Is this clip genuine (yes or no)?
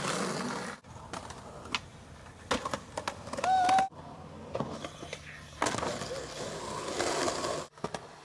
yes